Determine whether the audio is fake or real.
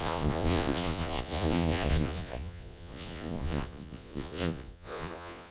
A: fake